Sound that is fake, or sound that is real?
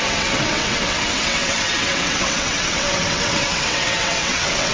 fake